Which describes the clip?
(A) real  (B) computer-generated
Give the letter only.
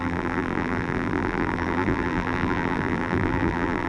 B